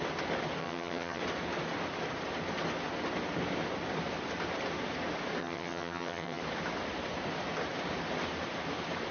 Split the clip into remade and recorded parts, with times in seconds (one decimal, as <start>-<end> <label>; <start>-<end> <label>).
0.0-0.6 recorded; 0.6-1.2 remade; 1.2-5.4 recorded; 5.4-6.4 remade; 6.4-9.1 recorded